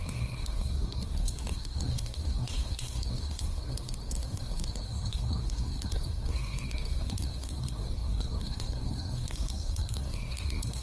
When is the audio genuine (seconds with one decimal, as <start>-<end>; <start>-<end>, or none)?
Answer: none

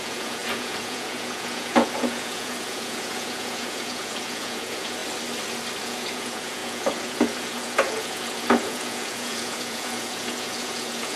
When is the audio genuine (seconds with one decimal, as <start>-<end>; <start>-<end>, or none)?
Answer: 5.0-5.8

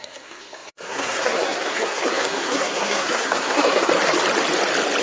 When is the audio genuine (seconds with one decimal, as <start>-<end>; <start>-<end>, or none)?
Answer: 3.9-5.0

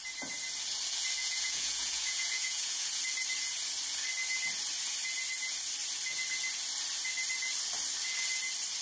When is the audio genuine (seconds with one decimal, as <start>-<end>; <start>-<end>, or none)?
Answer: 0.0-1.2; 3.0-8.8

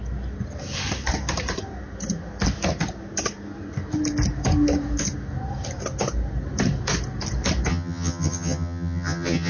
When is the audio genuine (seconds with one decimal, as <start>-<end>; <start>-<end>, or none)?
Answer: 0.0-7.7

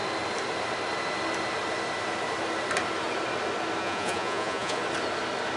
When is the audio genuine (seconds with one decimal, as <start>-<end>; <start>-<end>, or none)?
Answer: 0.0-3.8; 4.8-5.6